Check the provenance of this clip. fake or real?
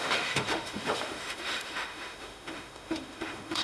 fake